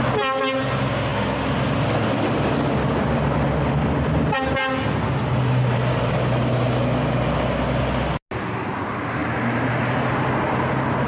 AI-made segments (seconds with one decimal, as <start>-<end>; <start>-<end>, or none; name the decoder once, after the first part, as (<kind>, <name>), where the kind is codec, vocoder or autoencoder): none